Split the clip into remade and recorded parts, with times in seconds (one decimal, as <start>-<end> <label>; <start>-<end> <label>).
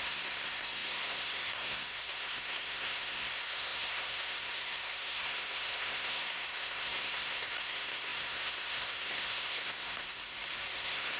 0.0-10.2 remade; 10.2-10.7 recorded; 10.7-11.2 remade